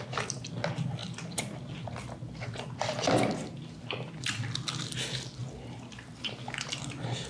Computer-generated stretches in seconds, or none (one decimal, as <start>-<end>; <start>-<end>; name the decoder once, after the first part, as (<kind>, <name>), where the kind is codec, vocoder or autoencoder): none